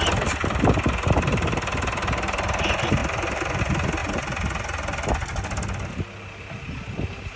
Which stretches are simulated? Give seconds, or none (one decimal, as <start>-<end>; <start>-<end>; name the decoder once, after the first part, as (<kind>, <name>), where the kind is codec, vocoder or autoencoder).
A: none